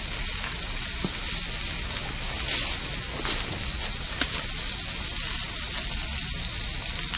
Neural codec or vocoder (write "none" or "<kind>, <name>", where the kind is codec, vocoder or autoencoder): none